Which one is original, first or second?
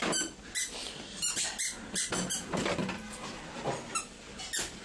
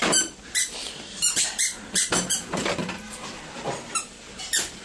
first